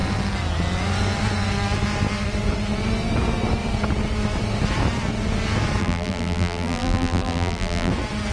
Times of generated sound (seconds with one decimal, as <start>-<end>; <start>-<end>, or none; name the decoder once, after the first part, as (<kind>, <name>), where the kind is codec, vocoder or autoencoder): 5.8-7.9 (vocoder, BigVGAN v2)